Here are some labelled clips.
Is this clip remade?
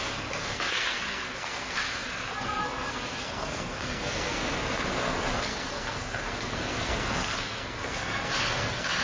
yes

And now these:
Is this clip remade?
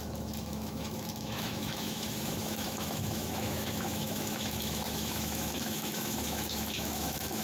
yes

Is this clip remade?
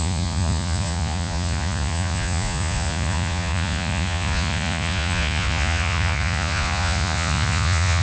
yes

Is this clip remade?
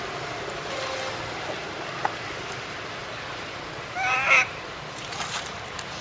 no